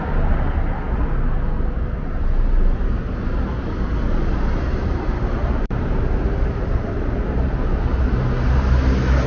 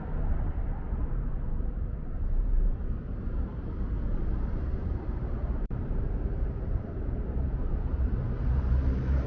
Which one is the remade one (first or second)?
second